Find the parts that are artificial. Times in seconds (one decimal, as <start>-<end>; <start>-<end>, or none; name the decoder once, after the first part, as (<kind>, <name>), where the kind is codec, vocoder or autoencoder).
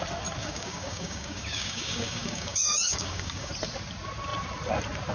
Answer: 0.4-3.5 (codec, DAC)